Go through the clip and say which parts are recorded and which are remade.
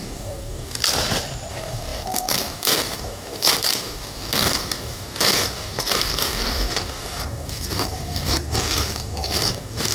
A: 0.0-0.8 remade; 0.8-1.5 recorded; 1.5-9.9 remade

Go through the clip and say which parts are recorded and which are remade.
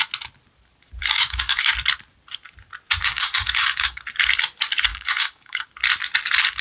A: 0.0-1.0 recorded; 1.0-1.7 remade; 1.7-3.1 recorded; 3.1-4.0 remade; 4.0-4.9 recorded; 4.9-5.7 remade; 5.7-6.6 recorded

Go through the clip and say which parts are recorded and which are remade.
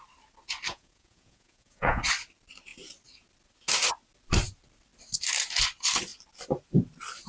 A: 0.0-0.7 recorded; 0.7-2.0 remade; 2.0-7.3 recorded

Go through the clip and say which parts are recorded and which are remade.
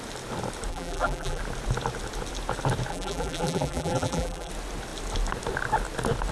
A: 0.0-0.7 recorded; 0.7-1.4 remade; 1.4-2.9 recorded; 2.9-4.5 remade; 4.5-6.3 recorded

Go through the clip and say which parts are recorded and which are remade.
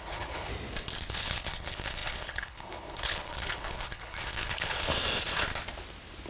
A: 0.0-0.5 remade; 0.5-1.1 recorded; 1.1-4.9 remade; 4.9-6.3 recorded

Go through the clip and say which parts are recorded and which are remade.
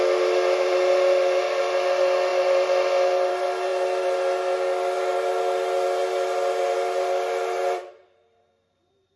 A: 0.0-9.2 recorded